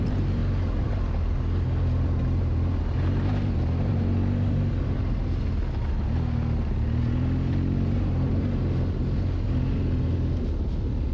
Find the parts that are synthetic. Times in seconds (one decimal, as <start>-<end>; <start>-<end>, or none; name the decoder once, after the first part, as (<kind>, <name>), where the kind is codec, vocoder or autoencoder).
none